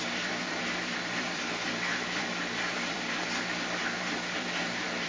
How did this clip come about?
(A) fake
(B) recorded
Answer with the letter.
A